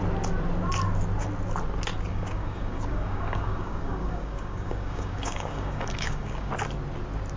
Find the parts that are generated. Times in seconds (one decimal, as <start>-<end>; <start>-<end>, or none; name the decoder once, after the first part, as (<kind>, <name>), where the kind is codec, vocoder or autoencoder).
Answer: 2.1-6.5 (codec, DAC)